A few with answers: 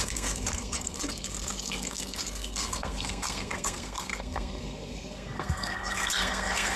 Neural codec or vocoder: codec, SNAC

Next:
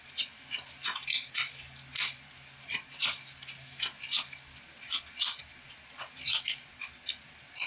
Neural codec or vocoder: none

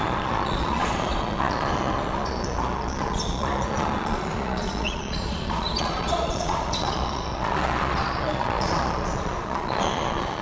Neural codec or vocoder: vocoder, Vocos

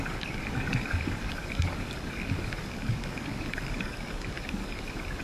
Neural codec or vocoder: codec, DAC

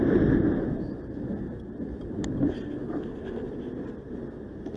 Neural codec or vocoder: none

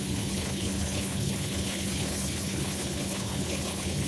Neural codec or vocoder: codec, HILCodec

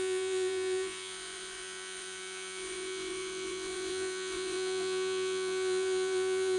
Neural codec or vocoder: vocoder, Vocos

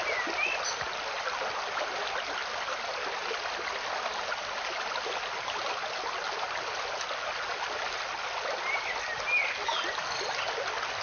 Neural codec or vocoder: none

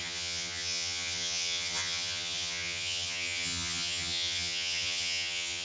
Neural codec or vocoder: vocoder, HiFi-GAN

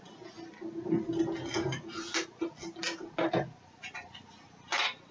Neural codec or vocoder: none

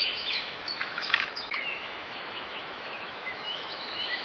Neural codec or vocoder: autoencoder, DAC-VAE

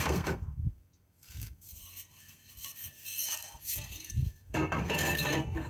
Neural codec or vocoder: codec, SNAC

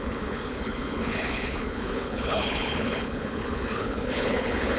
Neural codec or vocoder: codec, HILCodec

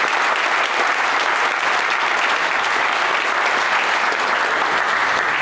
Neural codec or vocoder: none